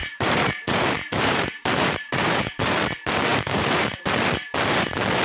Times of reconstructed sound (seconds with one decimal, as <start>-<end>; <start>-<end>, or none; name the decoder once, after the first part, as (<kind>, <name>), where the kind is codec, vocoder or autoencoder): 0.0-2.7 (vocoder, BigVGAN v2); 3.3-4.0